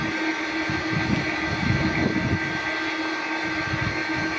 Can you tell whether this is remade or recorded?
recorded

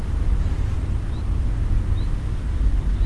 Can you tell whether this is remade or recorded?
recorded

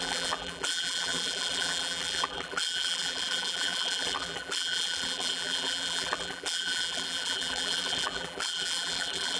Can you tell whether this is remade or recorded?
remade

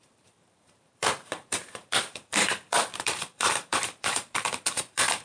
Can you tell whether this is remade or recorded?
remade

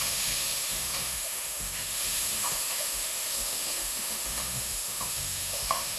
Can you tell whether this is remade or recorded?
remade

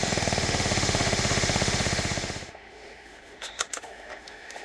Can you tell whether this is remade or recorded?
remade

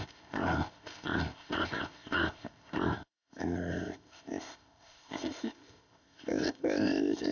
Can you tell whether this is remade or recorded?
remade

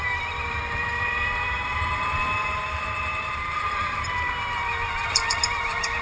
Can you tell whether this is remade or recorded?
remade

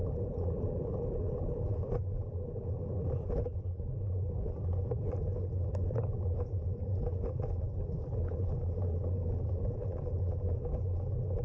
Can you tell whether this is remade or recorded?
remade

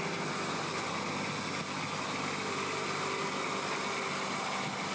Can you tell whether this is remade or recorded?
recorded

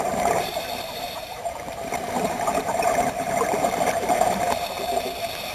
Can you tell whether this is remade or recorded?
remade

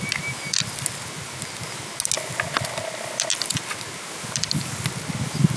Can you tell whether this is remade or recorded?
recorded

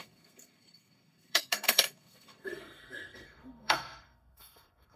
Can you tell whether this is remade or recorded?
remade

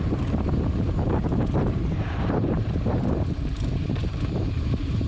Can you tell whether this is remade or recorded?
remade